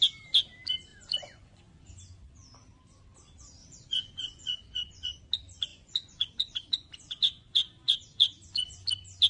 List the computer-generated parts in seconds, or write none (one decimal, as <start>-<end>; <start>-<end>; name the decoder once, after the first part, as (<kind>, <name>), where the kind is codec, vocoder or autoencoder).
0.9-1.6 (vocoder, Vocos); 3.6-5.2; 5.7-8.8